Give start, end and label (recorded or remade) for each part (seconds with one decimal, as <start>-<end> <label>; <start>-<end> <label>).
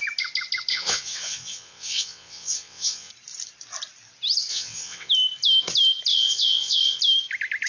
0.0-0.7 recorded; 0.7-3.1 remade; 3.1-4.5 recorded; 4.5-5.1 remade; 5.1-6.1 recorded; 6.1-7.0 remade; 7.0-7.7 recorded